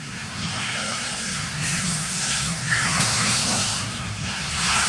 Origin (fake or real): fake